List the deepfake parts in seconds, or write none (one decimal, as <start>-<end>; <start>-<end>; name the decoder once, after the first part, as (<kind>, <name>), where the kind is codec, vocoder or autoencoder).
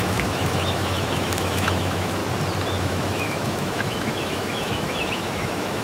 0.0-2.2 (autoencoder, DAC-VAE); 2.8-5.8